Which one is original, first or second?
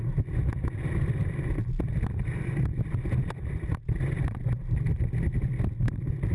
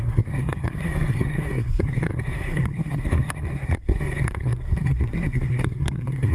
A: first